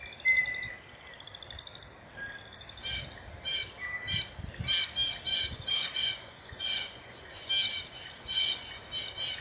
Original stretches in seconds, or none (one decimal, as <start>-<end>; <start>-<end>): 0.0-5.3; 7.5-7.9; 8.8-9.4